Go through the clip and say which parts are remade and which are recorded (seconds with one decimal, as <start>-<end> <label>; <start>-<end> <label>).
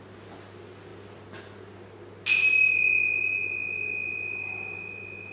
0.0-5.3 recorded